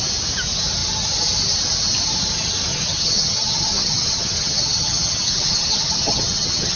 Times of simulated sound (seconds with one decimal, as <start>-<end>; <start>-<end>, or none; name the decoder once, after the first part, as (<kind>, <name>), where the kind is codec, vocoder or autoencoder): 2.7-6.8 (vocoder, HiFi-GAN)